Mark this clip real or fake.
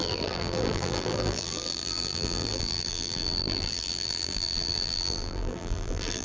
fake